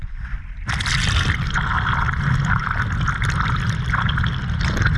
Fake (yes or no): no